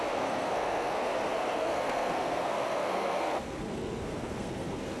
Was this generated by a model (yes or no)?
yes